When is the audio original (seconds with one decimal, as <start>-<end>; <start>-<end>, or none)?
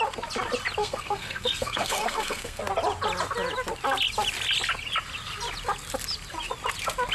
0.0-0.8; 2.6-7.1